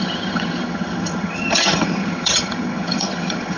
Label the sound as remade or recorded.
remade